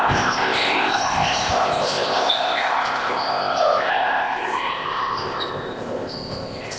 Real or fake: fake